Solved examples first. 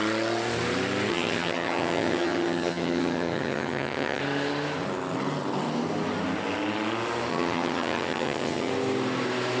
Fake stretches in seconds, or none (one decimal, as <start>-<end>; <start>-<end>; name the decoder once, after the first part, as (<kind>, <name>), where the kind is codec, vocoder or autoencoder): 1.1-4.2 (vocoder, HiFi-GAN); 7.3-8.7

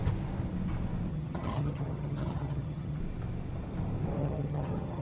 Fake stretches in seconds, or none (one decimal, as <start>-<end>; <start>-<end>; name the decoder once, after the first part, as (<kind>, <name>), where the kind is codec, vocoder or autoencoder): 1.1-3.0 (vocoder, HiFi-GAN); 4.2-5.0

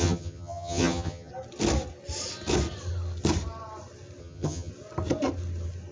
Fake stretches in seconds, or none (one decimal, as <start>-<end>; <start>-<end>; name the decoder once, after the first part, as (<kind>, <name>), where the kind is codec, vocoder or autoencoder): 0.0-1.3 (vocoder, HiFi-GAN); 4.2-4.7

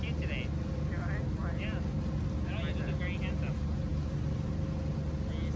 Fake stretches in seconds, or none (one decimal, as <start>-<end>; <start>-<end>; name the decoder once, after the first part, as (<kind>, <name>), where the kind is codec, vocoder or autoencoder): none

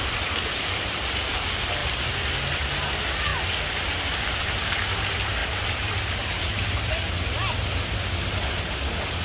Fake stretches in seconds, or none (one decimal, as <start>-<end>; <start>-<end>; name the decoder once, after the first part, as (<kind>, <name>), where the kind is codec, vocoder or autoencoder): none

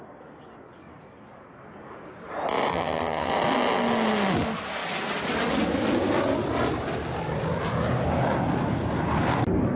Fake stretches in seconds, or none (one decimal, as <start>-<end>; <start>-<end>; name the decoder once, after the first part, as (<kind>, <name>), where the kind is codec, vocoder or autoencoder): 2.7-3.3 (vocoder, HiFi-GAN)